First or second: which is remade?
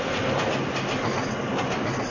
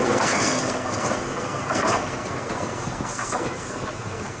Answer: second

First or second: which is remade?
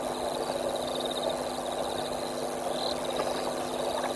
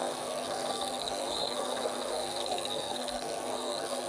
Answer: second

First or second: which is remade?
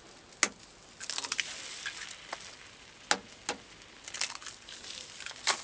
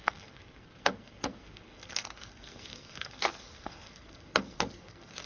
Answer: second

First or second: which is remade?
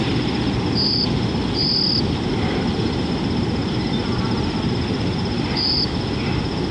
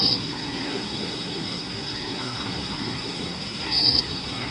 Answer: second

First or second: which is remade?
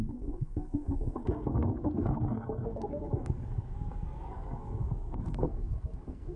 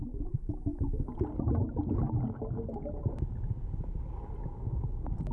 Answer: first